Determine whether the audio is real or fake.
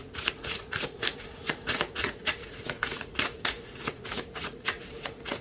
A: fake